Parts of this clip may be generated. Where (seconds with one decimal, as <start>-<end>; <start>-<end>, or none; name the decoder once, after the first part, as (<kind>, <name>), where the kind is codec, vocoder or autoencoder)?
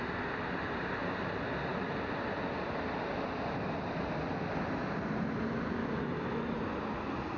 5.8-6.5 (autoencoder, DAC-VAE)